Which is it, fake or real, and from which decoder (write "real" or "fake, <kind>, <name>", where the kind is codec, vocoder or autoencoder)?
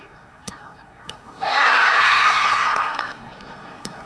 fake, codec, SNAC